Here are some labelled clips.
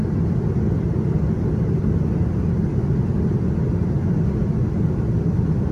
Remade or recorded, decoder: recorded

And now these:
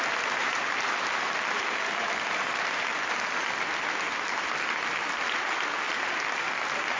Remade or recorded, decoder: recorded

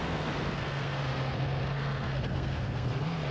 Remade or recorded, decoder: remade, codec, SNAC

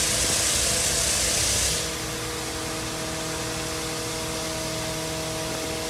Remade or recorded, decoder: recorded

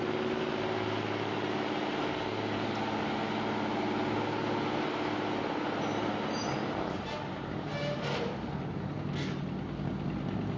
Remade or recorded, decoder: recorded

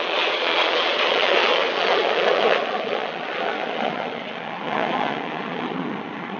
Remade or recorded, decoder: remade, vocoder, Vocos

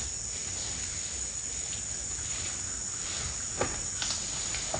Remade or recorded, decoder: recorded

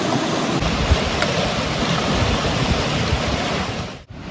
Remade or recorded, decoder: recorded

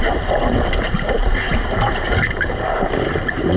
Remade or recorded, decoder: remade, vocoder, BigVGAN v2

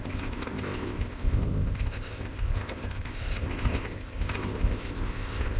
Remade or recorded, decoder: remade, codec, ZipCodec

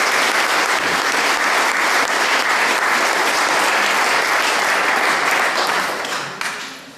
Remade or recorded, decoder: recorded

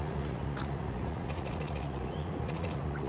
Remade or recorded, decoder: remade, vocoder, Vocos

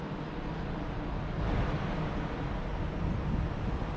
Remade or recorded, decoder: recorded